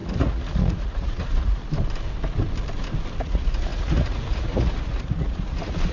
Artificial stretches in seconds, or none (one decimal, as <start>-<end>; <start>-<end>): 0.0-1.6; 3.2-5.9